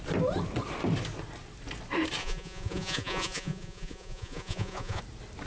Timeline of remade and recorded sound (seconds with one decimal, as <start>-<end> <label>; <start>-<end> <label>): 0.0-2.2 recorded; 2.2-5.0 remade; 5.0-5.5 recorded